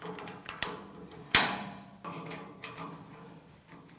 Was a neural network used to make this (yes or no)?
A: yes